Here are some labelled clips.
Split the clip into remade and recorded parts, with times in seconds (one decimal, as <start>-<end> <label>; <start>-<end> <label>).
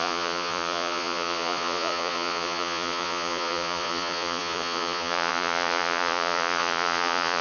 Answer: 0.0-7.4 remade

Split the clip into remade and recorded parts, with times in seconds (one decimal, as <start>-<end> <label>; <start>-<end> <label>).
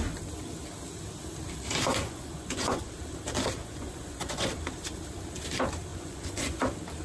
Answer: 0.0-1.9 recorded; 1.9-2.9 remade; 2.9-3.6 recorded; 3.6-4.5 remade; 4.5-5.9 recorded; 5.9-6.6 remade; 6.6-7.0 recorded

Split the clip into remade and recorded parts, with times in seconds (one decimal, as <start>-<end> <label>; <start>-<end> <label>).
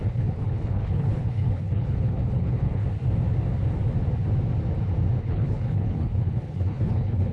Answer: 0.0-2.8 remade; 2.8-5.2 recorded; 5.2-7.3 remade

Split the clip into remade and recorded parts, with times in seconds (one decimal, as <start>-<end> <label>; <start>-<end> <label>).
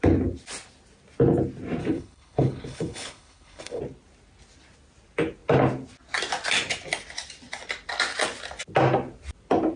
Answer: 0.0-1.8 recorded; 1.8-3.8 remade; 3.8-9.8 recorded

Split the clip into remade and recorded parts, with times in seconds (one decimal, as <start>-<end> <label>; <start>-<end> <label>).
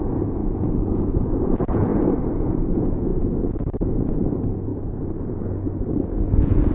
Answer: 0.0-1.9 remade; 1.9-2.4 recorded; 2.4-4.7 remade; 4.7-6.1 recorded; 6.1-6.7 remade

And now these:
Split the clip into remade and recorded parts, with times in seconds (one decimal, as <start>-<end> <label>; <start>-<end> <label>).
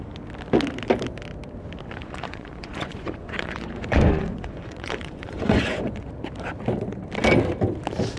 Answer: 0.0-2.0 recorded; 2.0-6.1 remade; 6.1-8.2 recorded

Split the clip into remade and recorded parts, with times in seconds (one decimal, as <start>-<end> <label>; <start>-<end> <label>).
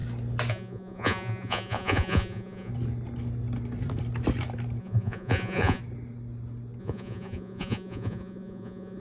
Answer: 0.0-0.5 recorded; 0.5-2.7 remade; 2.7-4.8 recorded; 4.8-5.8 remade; 5.8-6.8 recorded; 6.8-9.0 remade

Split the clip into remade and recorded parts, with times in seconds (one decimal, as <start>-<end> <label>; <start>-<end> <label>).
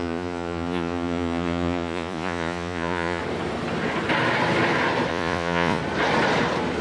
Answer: 0.0-3.2 remade; 3.2-5.1 recorded; 5.1-5.8 remade; 5.8-6.8 recorded